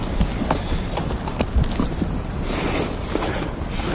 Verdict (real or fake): real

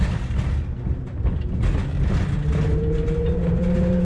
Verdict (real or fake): real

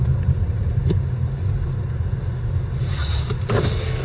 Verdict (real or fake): real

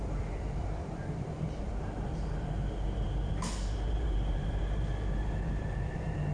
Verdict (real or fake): fake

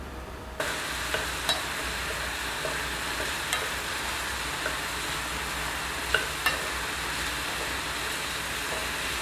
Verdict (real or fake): real